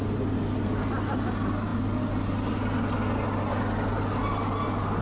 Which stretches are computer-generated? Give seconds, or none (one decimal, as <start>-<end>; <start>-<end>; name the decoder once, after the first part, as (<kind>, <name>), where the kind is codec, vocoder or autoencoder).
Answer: none

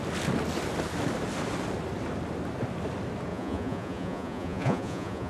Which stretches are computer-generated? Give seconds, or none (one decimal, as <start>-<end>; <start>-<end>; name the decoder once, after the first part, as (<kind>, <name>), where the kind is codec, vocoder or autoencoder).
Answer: 3.3-5.3 (vocoder, Vocos)

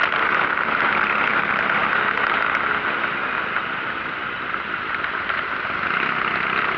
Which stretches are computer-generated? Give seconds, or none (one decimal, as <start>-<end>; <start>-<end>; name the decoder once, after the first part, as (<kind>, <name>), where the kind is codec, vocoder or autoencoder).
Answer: none

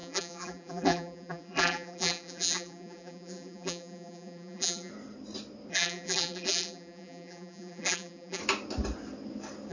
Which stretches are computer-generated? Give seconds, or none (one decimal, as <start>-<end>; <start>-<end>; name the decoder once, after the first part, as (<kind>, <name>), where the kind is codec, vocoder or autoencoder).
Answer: 0.0-4.9 (vocoder, BigVGAN v2); 5.7-8.4

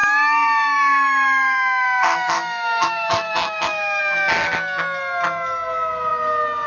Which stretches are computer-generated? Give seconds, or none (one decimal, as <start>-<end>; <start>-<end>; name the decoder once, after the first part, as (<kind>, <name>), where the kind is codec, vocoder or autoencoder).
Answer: 0.0-4.0 (autoencoder, DAC-VAE)

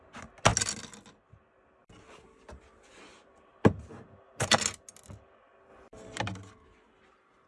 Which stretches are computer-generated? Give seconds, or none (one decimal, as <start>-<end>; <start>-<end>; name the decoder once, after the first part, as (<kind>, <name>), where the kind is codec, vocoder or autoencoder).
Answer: none

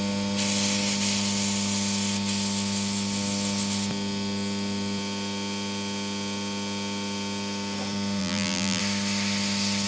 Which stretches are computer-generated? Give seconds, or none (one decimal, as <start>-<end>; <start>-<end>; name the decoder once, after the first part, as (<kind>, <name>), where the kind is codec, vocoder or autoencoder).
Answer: 8.2-8.8 (vocoder, BigVGAN v2)

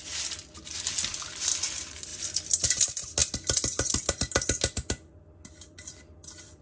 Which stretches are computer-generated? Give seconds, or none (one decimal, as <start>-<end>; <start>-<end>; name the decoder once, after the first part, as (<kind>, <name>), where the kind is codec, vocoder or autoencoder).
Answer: none